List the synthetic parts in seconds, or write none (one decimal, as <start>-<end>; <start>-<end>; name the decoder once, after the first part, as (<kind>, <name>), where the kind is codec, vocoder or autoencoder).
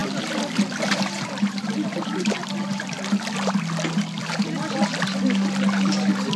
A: 0.8-2.4 (vocoder, BigVGAN v2)